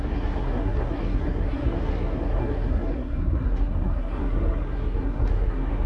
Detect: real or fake fake